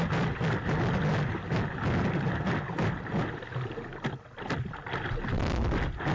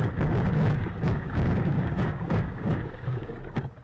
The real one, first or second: first